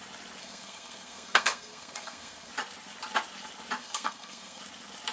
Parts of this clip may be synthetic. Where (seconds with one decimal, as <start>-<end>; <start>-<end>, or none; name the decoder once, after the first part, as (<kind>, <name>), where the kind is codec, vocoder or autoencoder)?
0.4-2.5 (codec, SNAC); 3.8-4.6